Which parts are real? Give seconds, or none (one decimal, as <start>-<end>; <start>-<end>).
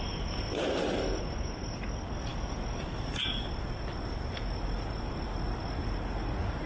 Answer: 0.0-6.7